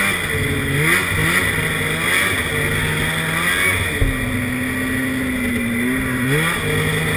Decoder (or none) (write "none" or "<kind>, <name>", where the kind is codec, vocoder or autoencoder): none